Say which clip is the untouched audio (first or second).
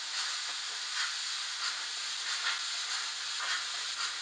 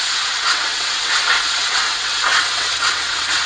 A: first